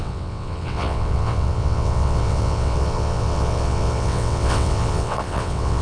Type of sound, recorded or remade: remade